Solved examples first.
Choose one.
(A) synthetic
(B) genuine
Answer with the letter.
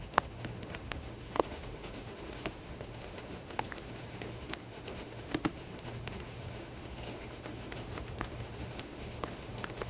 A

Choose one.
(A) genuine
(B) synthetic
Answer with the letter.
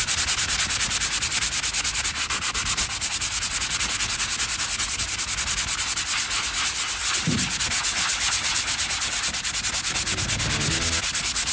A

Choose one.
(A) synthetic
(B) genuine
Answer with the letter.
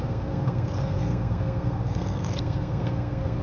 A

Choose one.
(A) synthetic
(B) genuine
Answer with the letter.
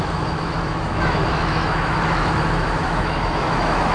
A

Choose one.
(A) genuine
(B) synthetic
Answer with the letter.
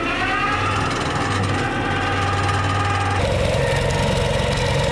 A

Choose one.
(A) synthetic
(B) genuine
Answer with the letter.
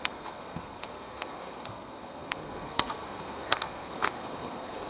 A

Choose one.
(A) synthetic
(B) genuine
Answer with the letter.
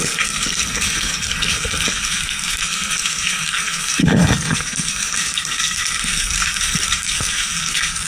A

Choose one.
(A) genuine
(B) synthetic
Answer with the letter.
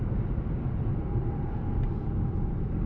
A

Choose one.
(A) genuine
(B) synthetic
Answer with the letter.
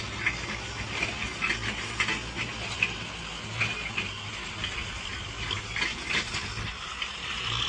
A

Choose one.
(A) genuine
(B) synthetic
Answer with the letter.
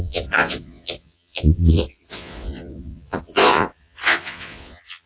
B